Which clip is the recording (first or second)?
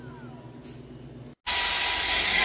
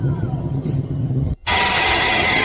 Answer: first